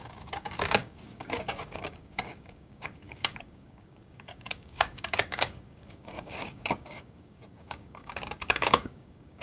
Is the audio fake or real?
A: fake